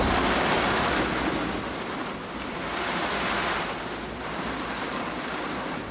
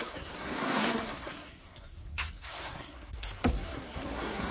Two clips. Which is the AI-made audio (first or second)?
second